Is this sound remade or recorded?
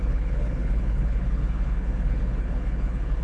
remade